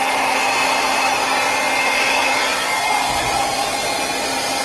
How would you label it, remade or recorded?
recorded